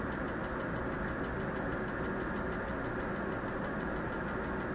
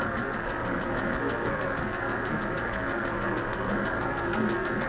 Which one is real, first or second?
first